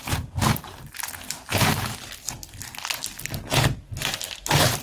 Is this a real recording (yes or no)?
yes